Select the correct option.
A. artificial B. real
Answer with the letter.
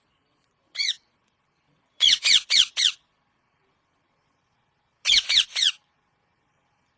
A